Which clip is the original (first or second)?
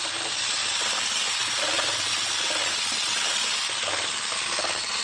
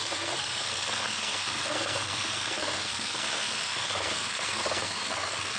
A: first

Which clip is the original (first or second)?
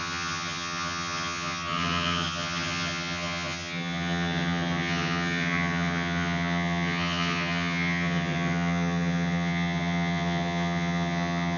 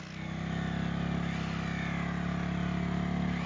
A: second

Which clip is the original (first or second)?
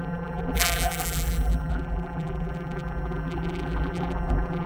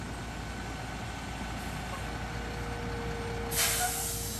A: second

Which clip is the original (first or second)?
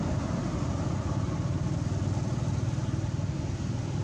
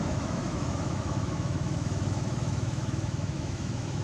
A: first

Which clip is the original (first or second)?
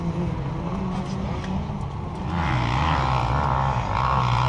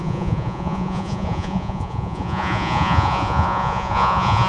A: first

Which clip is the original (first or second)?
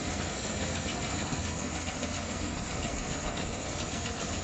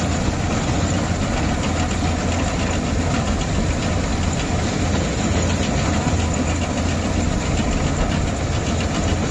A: second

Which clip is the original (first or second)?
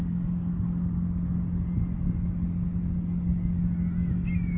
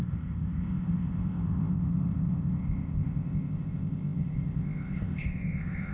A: first